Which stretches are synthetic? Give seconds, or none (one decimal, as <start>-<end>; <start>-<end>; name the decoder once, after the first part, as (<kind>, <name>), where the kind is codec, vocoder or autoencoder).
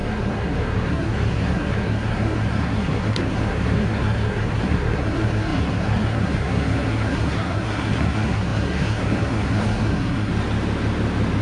0.0-10.3 (codec, SNAC)